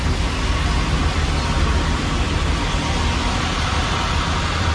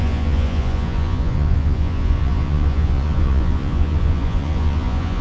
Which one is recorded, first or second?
first